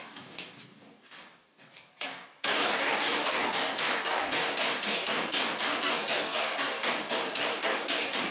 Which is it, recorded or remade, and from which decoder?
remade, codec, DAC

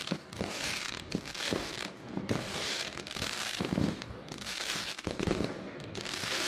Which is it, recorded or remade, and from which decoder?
remade, codec, DAC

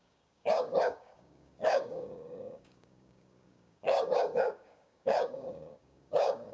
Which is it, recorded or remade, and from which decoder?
remade, codec, DAC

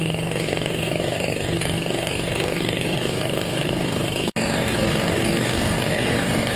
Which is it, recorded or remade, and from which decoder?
remade, codec, DAC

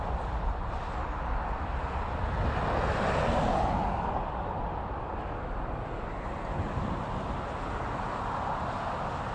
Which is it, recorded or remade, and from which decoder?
recorded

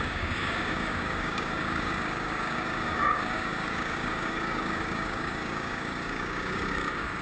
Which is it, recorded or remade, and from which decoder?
remade, codec, DAC